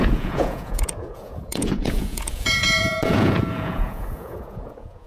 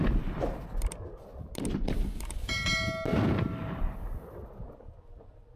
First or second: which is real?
second